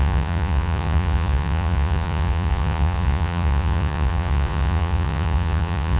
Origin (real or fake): fake